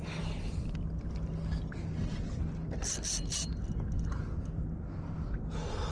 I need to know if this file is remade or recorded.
recorded